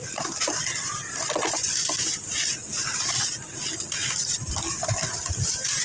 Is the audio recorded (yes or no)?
yes